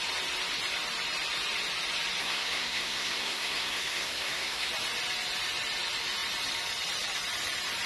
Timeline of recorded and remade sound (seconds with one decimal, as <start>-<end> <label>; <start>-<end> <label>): 0.0-2.2 recorded; 2.2-4.7 remade; 4.7-7.9 recorded